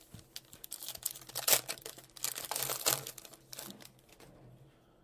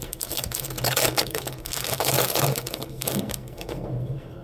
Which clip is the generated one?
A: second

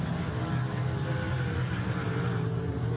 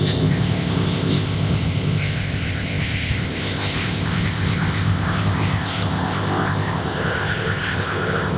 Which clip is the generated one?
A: second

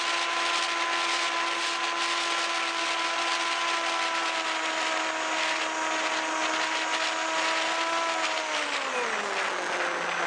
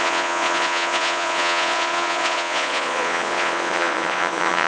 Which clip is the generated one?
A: second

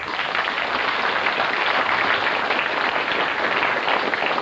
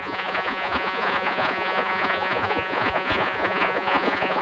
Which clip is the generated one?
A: second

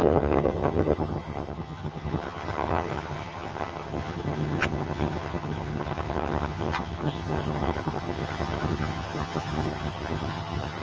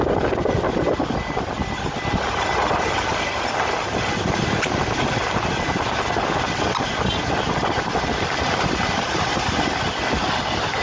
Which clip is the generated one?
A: first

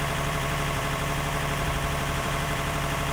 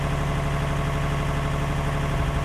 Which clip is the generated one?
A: first